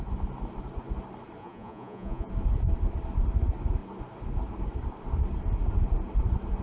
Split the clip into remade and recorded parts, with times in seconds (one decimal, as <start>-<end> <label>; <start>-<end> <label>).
0.0-1.4 recorded; 1.4-2.3 remade; 2.3-6.6 recorded